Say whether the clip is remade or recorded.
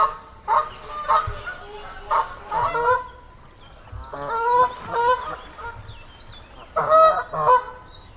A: recorded